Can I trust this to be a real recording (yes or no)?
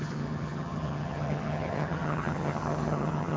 no